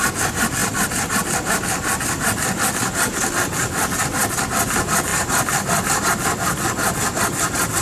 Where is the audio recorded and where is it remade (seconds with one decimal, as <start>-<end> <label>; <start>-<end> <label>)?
0.0-0.6 recorded; 0.6-1.1 remade; 1.1-7.8 recorded